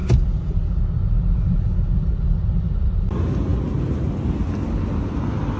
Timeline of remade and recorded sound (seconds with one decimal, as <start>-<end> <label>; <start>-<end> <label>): 0.0-5.6 recorded